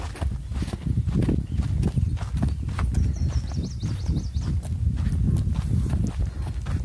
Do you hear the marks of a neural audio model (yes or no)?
no